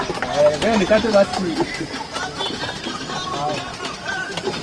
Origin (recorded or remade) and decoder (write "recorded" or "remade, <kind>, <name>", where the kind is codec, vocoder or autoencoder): recorded